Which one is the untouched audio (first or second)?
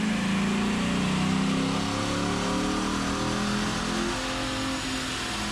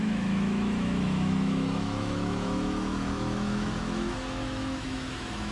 first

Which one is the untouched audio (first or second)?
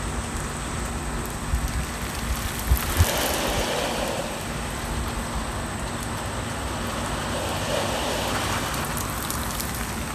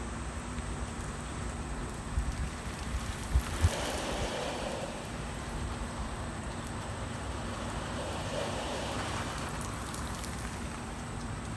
first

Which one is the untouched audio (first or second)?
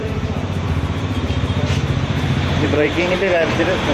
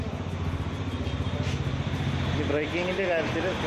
second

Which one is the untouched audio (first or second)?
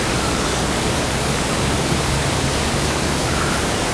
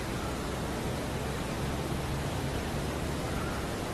second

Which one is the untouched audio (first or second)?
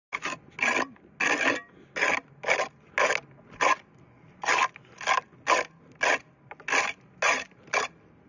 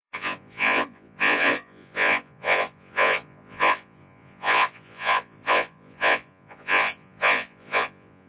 first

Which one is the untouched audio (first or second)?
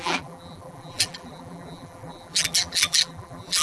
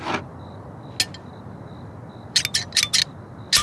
second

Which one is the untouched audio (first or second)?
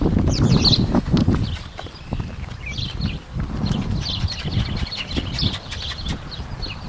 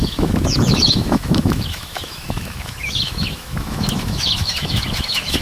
first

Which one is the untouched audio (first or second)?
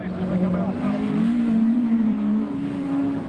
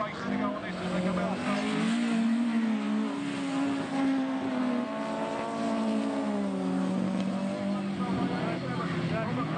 second